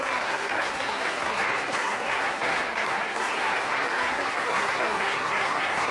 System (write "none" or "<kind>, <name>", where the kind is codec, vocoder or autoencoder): codec, SNAC